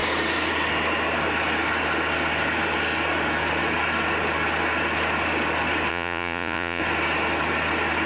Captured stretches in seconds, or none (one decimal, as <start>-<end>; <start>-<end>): 0.0-5.9; 6.8-8.1